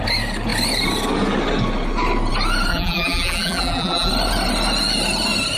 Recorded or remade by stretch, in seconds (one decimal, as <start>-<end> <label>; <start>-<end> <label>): 0.0-2.7 recorded; 2.7-4.1 remade; 4.1-5.6 recorded